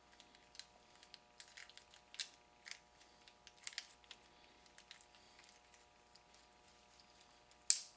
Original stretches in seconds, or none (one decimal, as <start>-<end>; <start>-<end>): 0.0-8.0